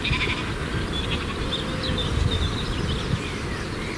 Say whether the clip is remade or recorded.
recorded